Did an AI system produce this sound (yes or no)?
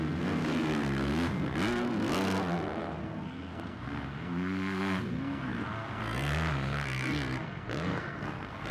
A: yes